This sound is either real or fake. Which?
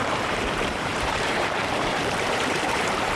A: fake